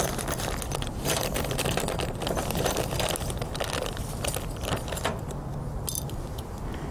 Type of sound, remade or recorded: recorded